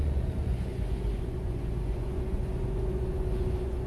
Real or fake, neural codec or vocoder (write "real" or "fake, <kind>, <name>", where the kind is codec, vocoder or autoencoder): fake, vocoder, Vocos